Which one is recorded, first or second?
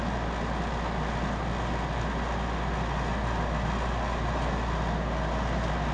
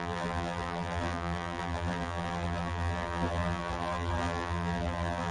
first